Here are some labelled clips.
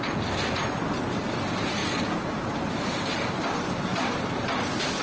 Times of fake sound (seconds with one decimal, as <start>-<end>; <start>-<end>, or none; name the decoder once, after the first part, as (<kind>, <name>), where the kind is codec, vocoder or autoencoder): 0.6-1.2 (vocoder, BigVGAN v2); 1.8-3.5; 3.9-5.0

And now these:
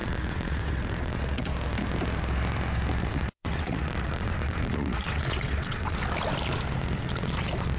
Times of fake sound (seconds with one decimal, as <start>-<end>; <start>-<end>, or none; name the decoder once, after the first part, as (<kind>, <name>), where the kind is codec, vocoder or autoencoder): 0.0-1.5 (vocoder, WaveNeXt); 3.0-6.0

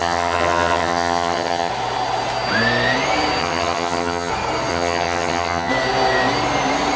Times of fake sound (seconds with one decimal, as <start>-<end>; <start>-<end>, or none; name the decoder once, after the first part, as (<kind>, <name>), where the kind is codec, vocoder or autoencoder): 0.0-1.7 (vocoder, HiFi-GAN); 3.4-4.3; 4.7-5.7

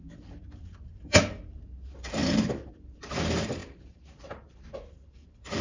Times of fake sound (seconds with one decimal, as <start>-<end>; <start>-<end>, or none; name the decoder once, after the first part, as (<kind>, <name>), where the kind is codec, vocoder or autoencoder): 0.0-5.6 (vocoder, BigVGAN v2)